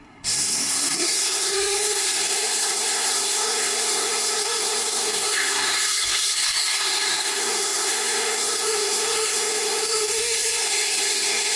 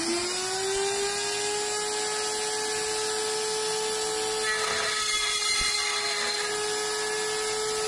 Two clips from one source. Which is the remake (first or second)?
first